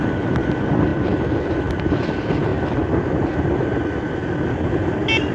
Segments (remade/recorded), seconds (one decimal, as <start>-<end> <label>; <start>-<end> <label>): 0.0-0.9 remade; 0.9-1.4 recorded; 1.4-2.5 remade; 2.5-5.3 recorded